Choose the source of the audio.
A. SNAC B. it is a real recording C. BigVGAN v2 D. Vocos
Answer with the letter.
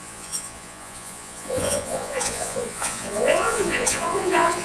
D